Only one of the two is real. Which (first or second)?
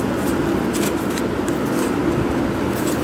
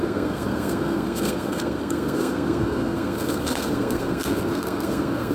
first